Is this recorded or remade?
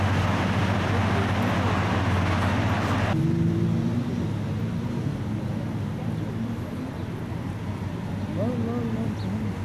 recorded